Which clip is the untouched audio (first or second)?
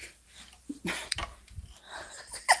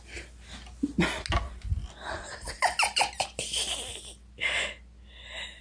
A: second